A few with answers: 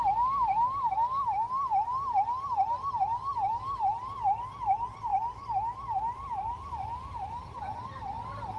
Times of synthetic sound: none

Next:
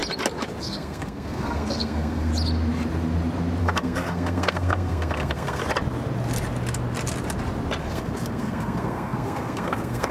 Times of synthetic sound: 0.6-2.3 (codec, SNAC); 3.6-5.6; 7.8-10.1